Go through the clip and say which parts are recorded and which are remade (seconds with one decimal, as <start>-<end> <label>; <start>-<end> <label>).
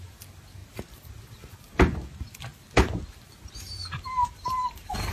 0.0-0.6 remade; 0.6-1.1 recorded; 1.1-2.5 remade; 2.5-3.0 recorded; 3.0-5.1 remade